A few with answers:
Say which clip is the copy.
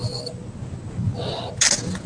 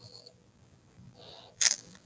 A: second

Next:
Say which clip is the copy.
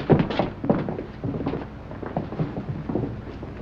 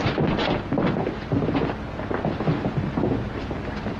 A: second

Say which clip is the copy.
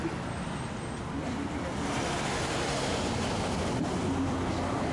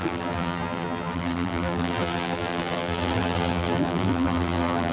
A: second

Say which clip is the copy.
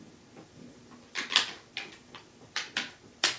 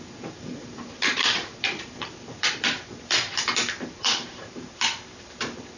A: second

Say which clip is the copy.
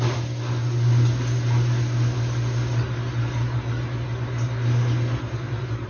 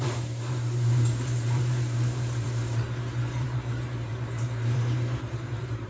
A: second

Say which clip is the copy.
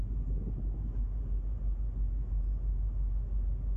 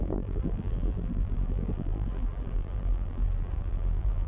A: second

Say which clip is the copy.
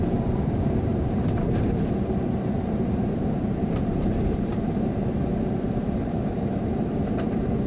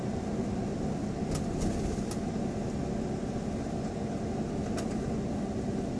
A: first